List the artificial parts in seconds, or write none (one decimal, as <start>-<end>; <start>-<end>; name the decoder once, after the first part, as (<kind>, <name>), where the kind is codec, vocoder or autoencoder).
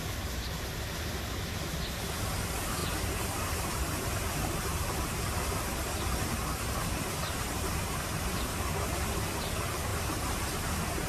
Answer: 2.8-5.2 (vocoder, BigVGAN v2); 6.8-8.5; 9.9-11.1